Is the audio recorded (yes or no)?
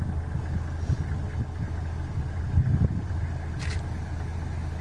yes